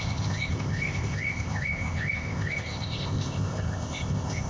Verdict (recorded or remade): remade